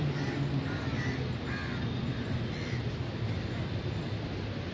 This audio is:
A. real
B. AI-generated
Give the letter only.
A